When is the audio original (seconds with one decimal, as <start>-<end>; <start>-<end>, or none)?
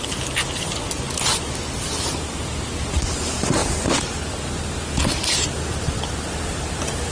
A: 0.0-7.1